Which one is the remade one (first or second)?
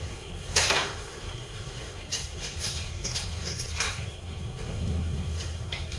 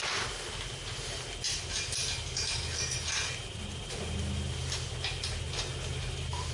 first